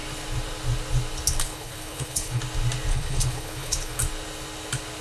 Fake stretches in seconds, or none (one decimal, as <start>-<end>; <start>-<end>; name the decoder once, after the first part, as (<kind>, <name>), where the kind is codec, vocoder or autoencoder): 1.4-2.4 (codec, HILCodec); 2.9-4.0